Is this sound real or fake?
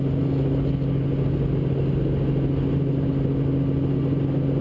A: real